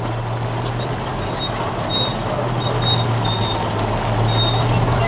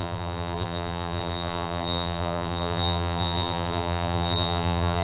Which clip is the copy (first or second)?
second